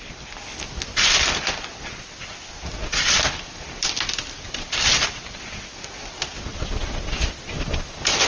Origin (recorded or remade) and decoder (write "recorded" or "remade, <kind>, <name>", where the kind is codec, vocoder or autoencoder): recorded